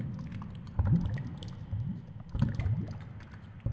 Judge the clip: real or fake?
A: real